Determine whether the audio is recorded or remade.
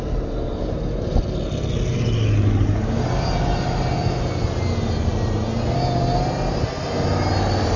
recorded